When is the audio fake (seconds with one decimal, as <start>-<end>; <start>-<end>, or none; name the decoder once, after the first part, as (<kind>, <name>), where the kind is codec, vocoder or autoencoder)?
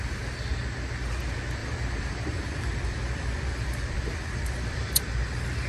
1.6-5.0 (vocoder, BigVGAN v2)